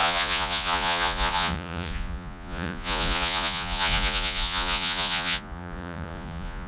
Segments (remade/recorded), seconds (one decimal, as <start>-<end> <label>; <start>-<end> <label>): 0.0-6.7 remade

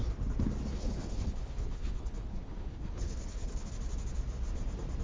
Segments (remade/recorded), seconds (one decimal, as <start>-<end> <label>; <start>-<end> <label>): 0.0-0.7 recorded; 0.7-3.7 remade; 3.7-5.0 recorded